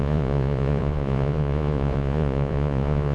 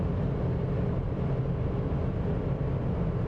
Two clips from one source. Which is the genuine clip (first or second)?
second